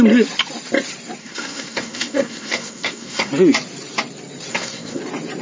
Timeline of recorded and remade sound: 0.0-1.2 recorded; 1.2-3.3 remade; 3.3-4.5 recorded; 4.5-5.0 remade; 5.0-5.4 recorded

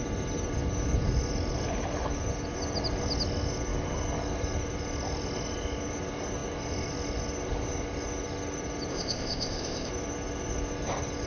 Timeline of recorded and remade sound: 0.0-8.9 recorded; 8.9-9.9 remade; 9.9-11.3 recorded